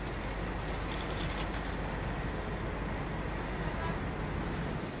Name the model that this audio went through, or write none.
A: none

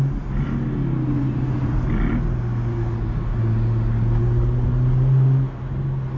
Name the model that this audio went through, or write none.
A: none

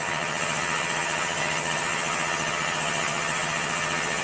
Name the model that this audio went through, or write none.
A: vocoder, HiFi-GAN